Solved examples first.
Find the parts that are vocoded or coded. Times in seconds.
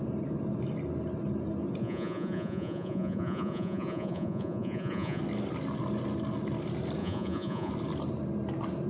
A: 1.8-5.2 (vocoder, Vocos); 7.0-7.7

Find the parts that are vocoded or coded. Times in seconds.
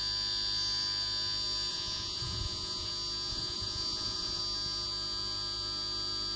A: 1.7-2.9 (vocoder, Vocos); 3.3-4.4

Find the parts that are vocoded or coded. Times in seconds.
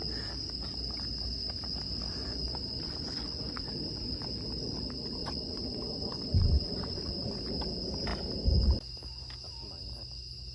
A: 2.2-3.7 (vocoder, Vocos); 5.2-7.1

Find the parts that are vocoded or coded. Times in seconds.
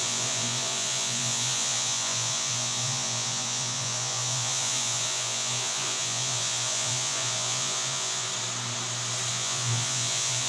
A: 0.0-8.3 (vocoder, Vocos); 9.3-10.5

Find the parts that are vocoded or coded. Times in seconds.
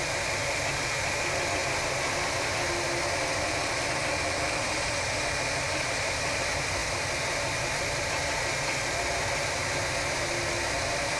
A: none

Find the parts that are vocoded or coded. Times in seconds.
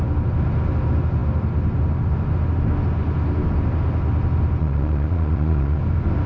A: 4.6-5.8 (vocoder, Vocos)